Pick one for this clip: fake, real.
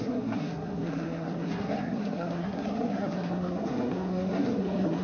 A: fake